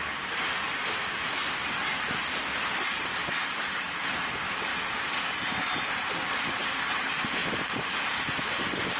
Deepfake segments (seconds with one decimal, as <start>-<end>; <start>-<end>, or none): 3.2-4.1

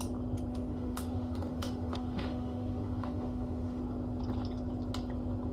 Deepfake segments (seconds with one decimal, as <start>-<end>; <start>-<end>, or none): 0.5-3.8

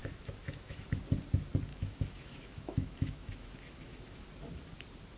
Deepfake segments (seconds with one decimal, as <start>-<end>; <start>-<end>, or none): 0.0-1.0; 1.7-4.2